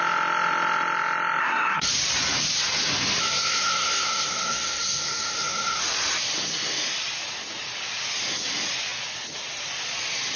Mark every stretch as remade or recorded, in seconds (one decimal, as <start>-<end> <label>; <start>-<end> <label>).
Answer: 0.0-1.4 recorded; 1.4-1.9 remade; 1.9-3.2 recorded; 3.2-5.8 remade; 5.8-10.4 recorded